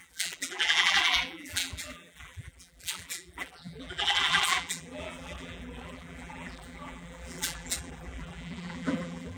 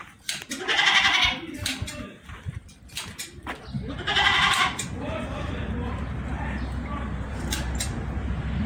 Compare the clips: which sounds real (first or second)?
second